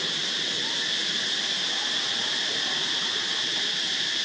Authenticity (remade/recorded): recorded